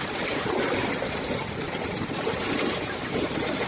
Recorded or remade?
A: recorded